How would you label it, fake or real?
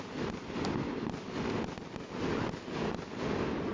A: real